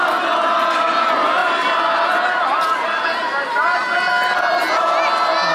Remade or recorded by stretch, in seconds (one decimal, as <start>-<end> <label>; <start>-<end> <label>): 0.0-5.5 recorded